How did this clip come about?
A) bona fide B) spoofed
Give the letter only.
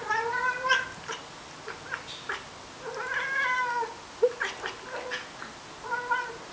A